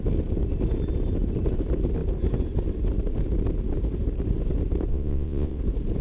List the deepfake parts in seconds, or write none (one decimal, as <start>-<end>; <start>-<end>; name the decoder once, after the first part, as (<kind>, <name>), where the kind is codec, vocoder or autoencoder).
4.9-5.6 (vocoder, WaveNeXt)